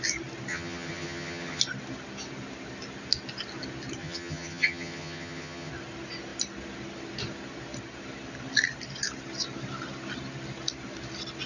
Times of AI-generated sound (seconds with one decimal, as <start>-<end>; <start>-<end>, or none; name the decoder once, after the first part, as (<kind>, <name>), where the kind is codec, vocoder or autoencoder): 0.5-1.6 (vocoder, HiFi-GAN); 4.0-5.7